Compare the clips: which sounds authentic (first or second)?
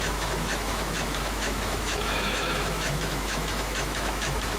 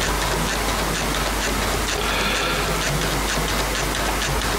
second